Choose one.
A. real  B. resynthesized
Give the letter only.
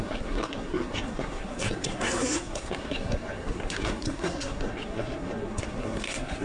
B